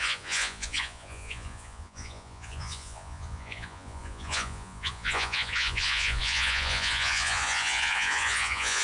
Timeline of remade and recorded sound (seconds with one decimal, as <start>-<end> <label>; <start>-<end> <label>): 0.0-8.8 remade